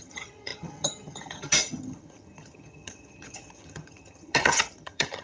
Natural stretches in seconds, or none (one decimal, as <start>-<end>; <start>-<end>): none